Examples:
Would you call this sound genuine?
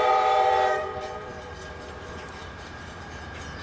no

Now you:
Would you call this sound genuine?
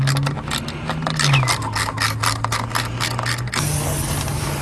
yes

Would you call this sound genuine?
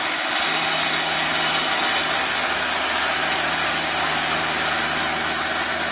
yes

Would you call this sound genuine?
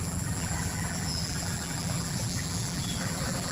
no